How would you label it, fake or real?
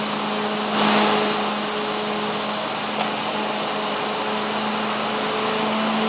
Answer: real